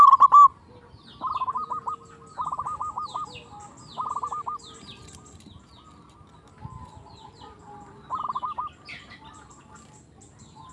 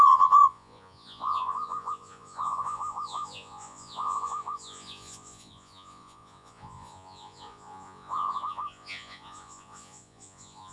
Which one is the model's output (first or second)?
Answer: second